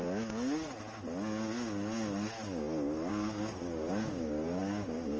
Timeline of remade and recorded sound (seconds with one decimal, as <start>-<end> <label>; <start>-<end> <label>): 0.0-3.1 recorded; 3.1-5.2 remade